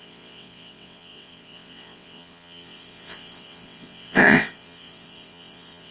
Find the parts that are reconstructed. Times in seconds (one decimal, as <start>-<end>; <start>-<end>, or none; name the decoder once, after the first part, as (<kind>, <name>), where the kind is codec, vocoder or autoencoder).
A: 0.0-5.9 (vocoder, WaveNeXt)